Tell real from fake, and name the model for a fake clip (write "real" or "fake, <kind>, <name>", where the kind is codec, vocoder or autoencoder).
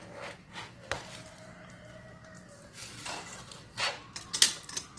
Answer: real